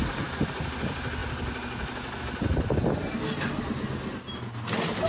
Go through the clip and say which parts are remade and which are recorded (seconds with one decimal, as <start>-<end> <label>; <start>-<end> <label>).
0.0-5.1 recorded